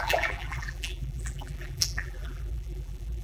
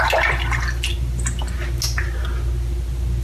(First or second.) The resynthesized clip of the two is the first